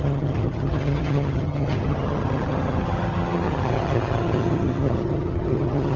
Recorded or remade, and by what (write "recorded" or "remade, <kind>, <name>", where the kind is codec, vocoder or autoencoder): remade, vocoder, HiFi-GAN